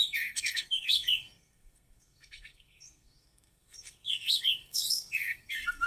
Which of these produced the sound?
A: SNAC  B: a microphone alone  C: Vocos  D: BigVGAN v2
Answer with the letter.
A